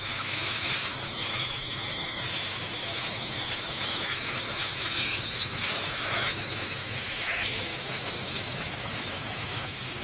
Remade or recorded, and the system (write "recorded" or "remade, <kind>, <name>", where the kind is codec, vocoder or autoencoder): remade, autoencoder, DAC-VAE